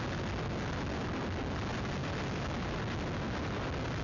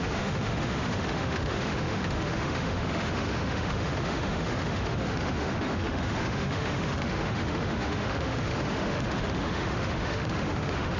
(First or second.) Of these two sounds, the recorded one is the first